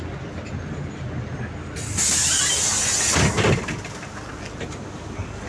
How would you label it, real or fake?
real